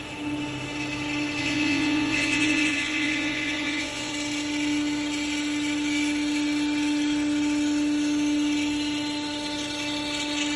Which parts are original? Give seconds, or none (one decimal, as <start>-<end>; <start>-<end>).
0.0-1.4; 4.1-10.6